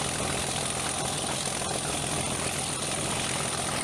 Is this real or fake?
real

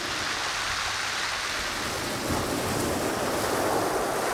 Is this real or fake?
real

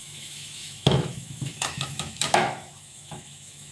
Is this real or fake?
fake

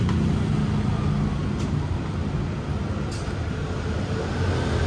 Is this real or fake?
real